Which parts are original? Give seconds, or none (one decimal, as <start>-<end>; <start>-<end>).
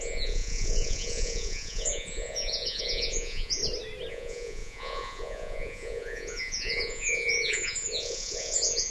3.6-4.1